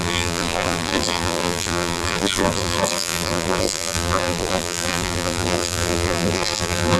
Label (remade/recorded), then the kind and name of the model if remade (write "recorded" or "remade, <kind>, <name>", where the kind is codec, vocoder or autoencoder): remade, vocoder, BigVGAN v2